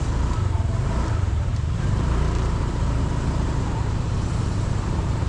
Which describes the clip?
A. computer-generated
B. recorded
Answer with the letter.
A